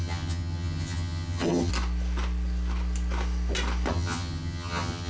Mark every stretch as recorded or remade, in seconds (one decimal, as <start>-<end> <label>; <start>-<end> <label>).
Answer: 0.0-1.7 remade; 1.7-3.9 recorded; 3.9-5.1 remade